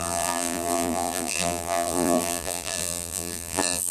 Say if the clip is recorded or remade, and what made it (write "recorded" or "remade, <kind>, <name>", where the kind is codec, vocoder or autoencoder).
remade, vocoder, BigVGAN v2